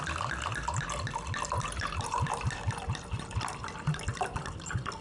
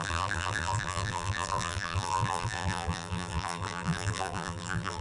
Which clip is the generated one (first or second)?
second